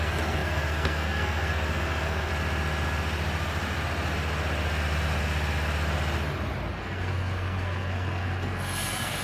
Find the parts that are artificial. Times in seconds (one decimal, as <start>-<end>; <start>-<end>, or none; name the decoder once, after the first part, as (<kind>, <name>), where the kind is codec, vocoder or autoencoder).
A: 0.0-2.3 (codec, SNAC); 6.7-9.2